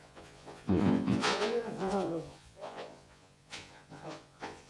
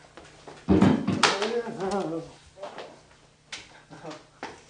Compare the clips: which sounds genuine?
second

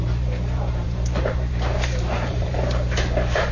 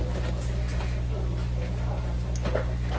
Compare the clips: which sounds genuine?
second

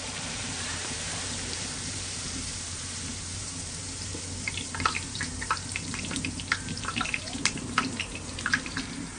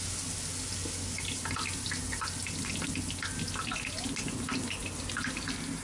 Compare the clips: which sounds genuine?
second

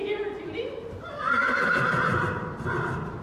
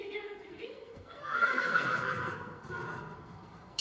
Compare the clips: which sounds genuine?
first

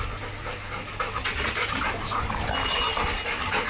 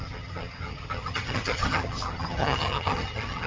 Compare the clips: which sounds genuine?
first